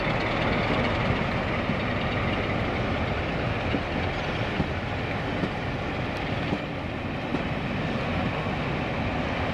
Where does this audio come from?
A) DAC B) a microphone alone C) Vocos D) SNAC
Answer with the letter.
B